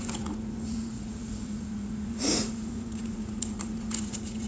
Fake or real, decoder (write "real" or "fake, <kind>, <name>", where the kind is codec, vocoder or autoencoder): fake, vocoder, Vocos